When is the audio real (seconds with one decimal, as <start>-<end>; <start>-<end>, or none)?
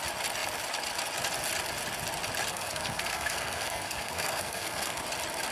0.0-2.5; 5.0-5.5